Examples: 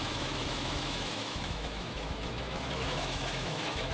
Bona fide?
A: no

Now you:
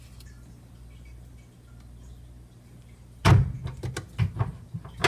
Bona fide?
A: yes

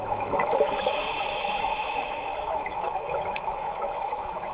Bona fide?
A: no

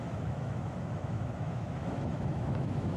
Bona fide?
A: no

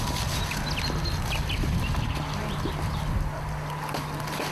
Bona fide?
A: yes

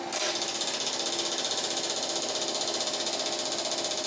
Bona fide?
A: yes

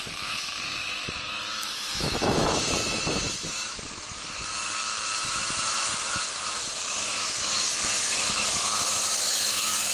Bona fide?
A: no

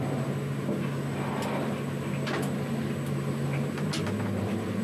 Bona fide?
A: yes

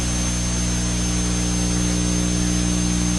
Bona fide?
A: yes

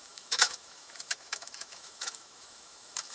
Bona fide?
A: no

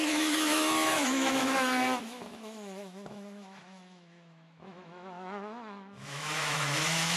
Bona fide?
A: no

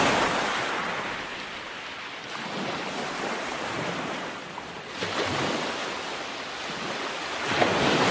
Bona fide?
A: yes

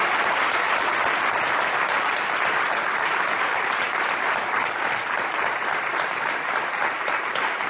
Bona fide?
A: yes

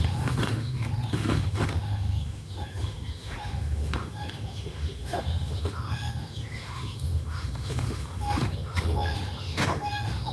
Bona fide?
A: no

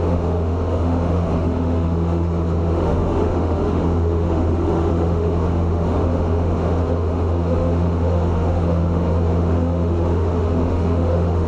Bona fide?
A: no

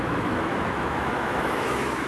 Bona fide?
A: no